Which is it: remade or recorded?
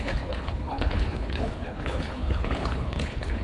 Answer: remade